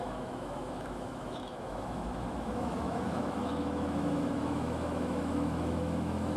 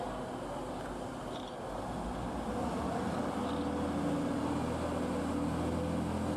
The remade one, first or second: first